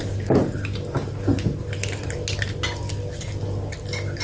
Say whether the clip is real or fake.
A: real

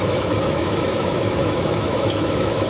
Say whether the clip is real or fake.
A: fake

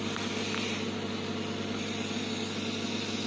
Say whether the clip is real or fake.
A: real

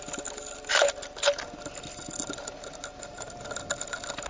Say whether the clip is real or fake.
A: real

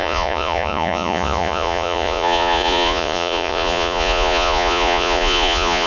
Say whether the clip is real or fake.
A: fake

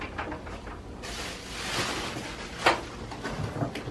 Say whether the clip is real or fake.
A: real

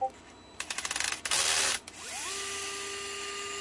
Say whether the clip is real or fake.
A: real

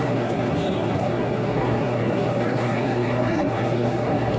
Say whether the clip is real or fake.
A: fake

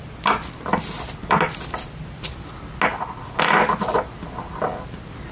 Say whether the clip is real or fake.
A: real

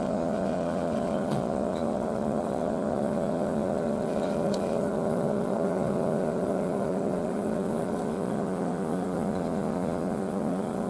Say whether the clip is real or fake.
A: fake